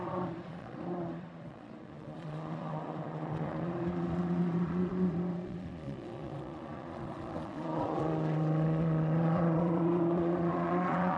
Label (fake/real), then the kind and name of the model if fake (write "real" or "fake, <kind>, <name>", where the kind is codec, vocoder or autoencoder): fake, vocoder, Vocos